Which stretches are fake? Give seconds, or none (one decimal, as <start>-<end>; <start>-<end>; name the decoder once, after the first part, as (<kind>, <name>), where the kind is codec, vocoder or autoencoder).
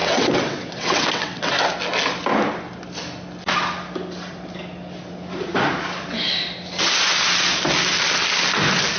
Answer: 0.0-1.5 (vocoder, WaveNeXt)